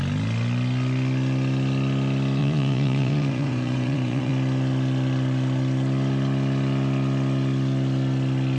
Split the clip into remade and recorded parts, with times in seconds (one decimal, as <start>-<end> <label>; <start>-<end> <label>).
0.0-2.4 recorded; 2.4-4.3 remade; 4.3-8.6 recorded